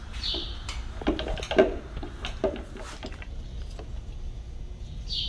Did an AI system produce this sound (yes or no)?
no